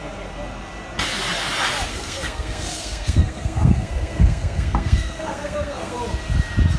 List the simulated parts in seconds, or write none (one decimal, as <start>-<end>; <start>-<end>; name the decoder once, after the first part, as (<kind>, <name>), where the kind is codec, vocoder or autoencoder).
1.9-6.0 (codec, SNAC)